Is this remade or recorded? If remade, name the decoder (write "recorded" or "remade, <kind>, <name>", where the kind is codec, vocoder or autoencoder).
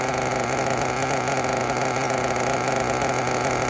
recorded